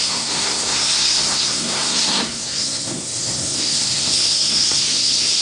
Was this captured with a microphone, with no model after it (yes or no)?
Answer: no